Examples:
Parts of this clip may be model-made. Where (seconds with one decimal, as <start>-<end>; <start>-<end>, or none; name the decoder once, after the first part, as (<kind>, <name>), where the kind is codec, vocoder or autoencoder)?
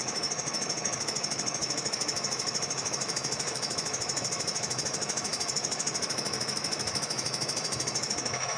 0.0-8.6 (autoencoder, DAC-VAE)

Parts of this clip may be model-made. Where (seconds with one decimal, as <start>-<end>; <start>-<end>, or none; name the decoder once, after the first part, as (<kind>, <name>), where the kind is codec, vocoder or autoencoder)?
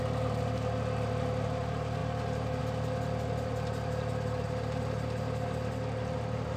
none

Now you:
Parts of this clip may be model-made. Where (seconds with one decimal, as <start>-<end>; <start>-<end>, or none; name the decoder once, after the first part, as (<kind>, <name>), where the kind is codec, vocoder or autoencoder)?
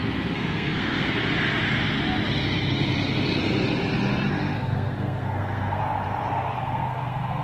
0.0-1.2 (codec, SNAC); 4.3-5.8; 6.6-7.4